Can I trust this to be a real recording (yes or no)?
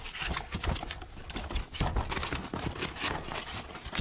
yes